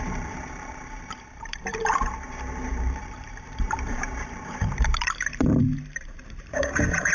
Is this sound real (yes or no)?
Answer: no